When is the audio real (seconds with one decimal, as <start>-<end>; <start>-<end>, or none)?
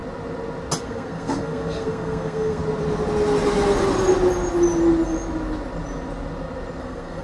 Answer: 0.0-0.8; 2.6-6.8